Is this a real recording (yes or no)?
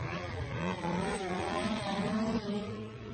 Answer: no